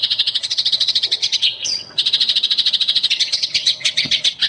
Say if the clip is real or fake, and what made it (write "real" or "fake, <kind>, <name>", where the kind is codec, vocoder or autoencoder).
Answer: fake, vocoder, WaveNeXt